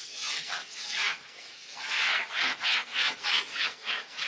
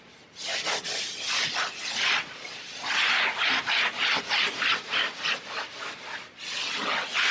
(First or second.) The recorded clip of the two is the second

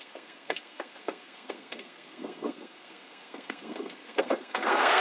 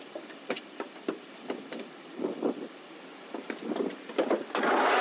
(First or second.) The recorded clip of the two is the second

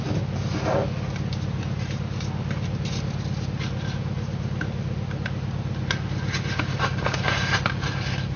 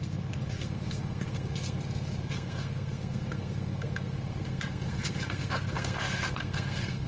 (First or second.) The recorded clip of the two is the first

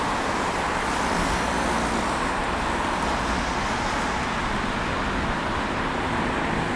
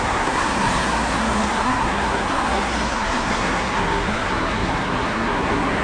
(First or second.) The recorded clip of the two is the first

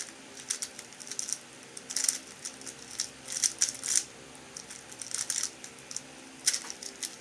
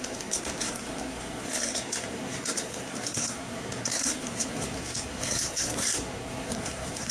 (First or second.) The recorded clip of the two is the first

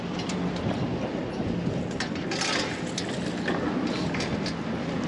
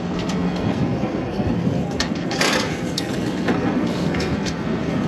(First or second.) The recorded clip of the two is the first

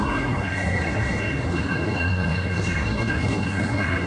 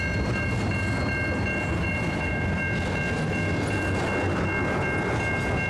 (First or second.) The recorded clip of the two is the second